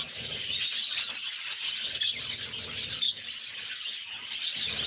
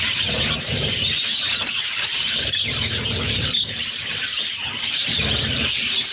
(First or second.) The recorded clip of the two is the first